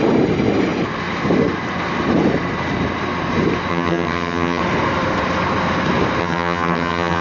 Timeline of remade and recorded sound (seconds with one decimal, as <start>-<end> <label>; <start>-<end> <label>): 0.0-3.7 recorded; 3.7-4.6 remade; 4.6-6.2 recorded; 6.2-7.2 remade